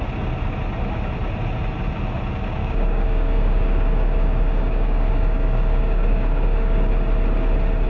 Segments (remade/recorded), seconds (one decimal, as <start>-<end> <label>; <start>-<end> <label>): 0.0-2.6 recorded; 2.6-6.9 remade; 6.9-7.9 recorded